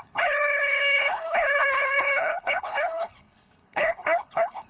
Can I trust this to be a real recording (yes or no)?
no